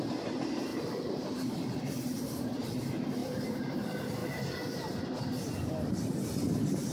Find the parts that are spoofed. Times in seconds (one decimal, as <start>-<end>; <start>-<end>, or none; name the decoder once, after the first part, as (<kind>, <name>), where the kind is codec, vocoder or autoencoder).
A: 3.2-3.7 (vocoder, BigVGAN v2); 4.2-4.7